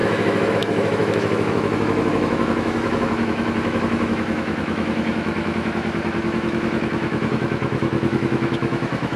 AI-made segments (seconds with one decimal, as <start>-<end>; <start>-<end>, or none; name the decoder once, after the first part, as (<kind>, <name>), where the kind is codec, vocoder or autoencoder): 0.0-9.2 (autoencoder, DAC-VAE)